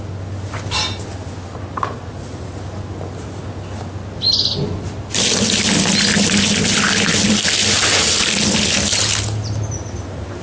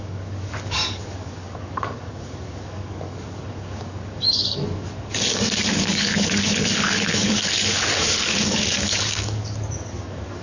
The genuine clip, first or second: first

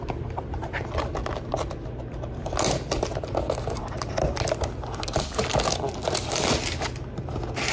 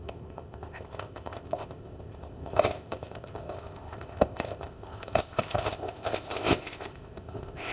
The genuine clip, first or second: first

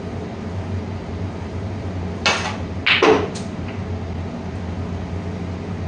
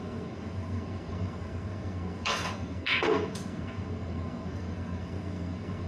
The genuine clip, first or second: first